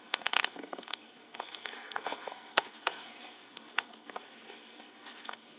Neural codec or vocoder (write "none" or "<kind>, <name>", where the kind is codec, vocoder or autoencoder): codec, SNAC